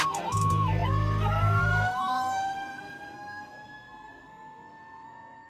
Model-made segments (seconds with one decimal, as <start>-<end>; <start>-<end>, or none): 0.0-5.5